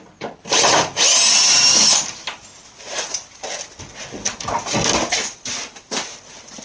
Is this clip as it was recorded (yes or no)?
yes